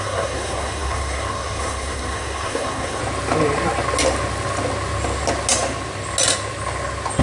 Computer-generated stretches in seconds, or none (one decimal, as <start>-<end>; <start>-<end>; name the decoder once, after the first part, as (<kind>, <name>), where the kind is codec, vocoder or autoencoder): 0.0-3.0 (codec, SNAC)